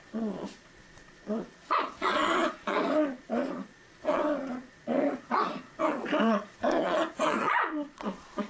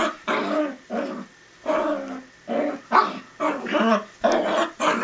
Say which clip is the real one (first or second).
second